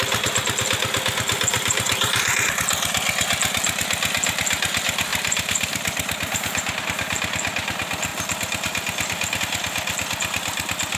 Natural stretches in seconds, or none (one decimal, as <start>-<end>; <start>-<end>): 0.0-1.5; 2.3-5.1; 6.8-11.0